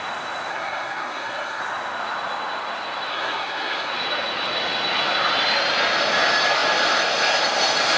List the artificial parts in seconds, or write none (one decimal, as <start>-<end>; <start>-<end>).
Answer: 0.5-1.6; 3.1-3.9